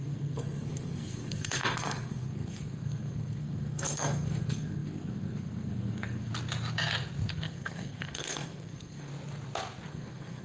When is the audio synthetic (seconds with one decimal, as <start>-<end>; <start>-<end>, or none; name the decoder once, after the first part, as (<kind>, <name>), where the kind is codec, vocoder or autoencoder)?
0.0-6.3 (codec, SNAC); 7.3-9.1; 9.9-10.4